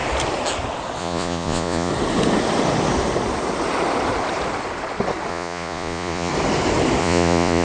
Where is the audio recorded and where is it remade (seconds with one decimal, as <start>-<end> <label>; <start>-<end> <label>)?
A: 0.0-1.0 recorded; 1.0-1.9 remade; 1.9-5.3 recorded; 5.3-6.3 remade; 6.3-7.0 recorded; 7.0-7.6 remade